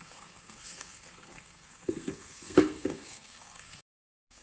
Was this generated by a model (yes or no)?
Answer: yes